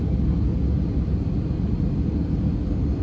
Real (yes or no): yes